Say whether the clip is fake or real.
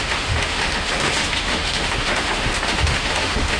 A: fake